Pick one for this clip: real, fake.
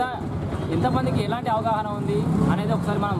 real